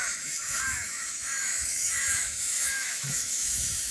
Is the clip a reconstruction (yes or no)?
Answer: yes